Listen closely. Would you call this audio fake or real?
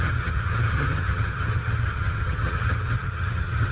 fake